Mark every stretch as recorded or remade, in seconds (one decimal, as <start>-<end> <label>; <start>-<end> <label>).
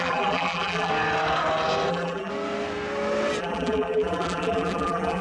0.0-0.9 remade; 0.9-1.9 recorded; 1.9-2.3 remade; 2.3-3.4 recorded; 3.4-5.2 remade